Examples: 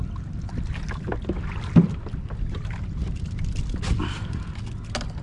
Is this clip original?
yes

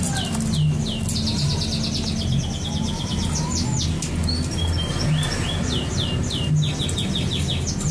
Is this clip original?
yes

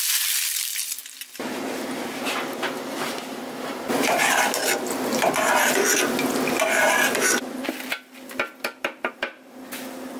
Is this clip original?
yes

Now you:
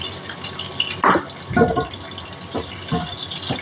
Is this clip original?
yes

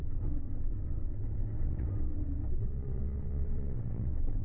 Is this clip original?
no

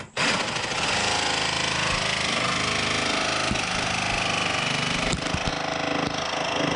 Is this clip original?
yes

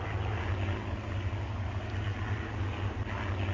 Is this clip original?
yes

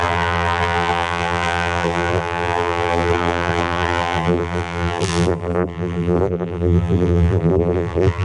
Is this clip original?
no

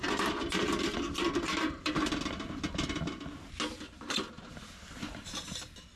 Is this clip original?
yes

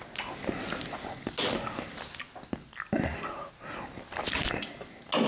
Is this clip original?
yes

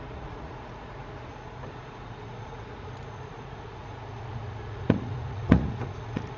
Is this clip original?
no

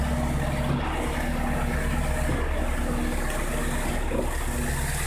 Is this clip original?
yes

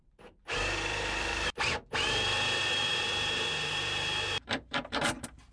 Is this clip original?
no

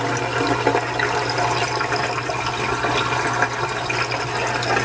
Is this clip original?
yes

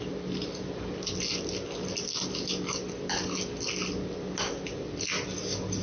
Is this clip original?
yes